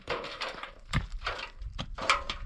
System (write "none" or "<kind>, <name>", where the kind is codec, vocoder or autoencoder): vocoder, BigVGAN v2